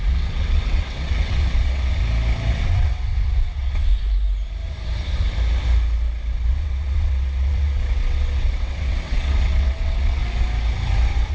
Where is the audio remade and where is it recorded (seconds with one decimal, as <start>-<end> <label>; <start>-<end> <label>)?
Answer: 0.0-2.0 remade; 2.0-2.6 recorded; 2.6-3.9 remade; 3.9-6.5 recorded; 6.5-10.2 remade; 10.2-11.3 recorded